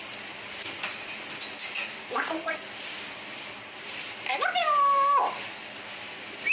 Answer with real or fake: real